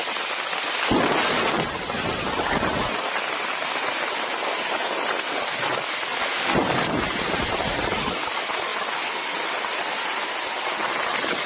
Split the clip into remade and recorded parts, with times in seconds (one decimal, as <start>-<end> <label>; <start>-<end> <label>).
0.0-6.1 recorded; 6.1-7.7 remade; 7.7-11.5 recorded